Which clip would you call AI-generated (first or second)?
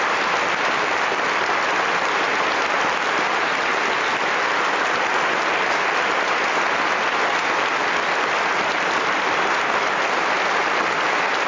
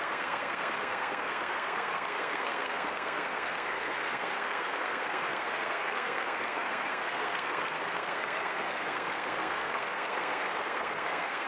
second